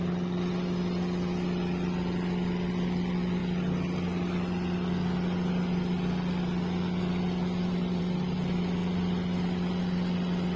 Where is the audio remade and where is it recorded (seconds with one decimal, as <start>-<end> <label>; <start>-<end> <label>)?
0.0-10.6 recorded